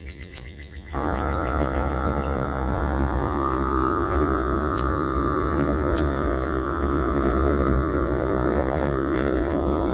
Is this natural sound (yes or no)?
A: no